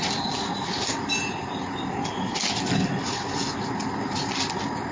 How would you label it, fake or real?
real